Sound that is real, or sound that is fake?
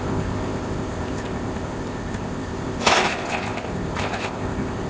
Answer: fake